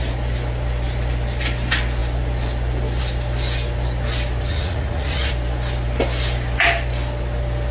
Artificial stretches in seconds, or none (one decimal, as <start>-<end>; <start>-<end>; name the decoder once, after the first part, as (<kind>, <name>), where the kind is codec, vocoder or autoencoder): 4.5-5.3 (vocoder, Vocos)